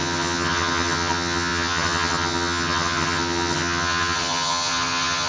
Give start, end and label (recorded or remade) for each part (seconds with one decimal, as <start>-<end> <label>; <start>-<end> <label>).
0.0-5.3 remade